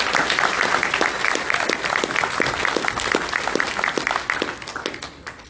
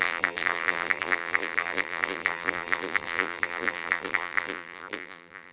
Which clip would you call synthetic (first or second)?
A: second